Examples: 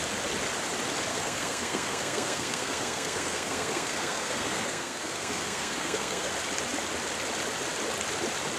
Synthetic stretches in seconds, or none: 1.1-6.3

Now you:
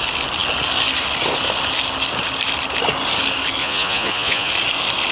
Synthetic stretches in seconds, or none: 3.6-4.5

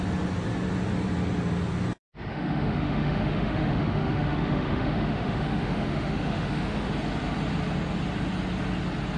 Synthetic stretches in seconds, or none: 2.3-6.9